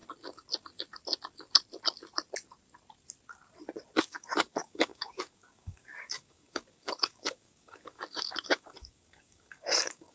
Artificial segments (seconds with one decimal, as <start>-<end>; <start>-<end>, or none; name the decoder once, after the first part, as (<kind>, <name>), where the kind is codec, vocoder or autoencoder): 4.0-10.1 (codec, DAC)